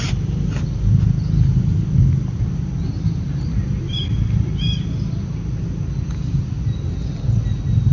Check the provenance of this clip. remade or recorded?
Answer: recorded